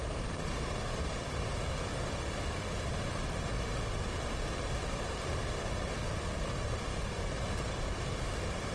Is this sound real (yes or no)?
no